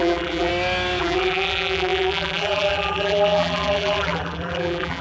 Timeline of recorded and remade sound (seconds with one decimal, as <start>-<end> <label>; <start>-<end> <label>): 0.0-0.5 remade; 0.5-1.0 recorded; 1.0-5.0 remade

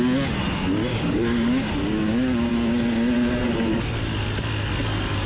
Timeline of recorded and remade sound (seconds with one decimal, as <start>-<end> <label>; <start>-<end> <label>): 0.0-0.9 recorded; 0.9-2.5 remade; 2.5-5.3 recorded